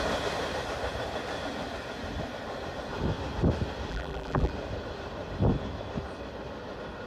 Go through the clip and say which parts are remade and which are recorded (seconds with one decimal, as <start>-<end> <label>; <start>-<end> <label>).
0.0-3.9 recorded; 3.9-4.5 remade; 4.5-7.1 recorded